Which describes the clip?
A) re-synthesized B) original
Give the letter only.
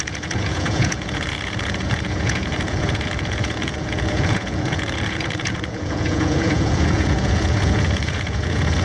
A